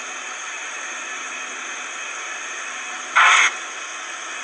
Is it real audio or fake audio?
real